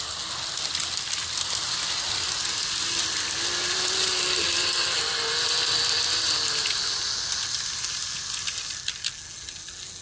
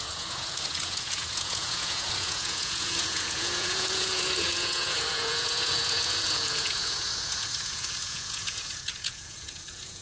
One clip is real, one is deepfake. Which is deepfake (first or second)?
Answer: second